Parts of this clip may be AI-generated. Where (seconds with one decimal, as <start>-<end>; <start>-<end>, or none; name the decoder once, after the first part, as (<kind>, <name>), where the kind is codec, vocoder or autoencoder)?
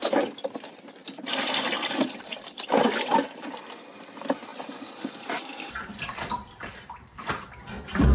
1.0-3.6 (vocoder, BigVGAN v2); 4.5-6.1